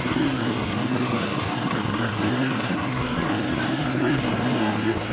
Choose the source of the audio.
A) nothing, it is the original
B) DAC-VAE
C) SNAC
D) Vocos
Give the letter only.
C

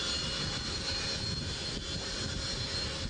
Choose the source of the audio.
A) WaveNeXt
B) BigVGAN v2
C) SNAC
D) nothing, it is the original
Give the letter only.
D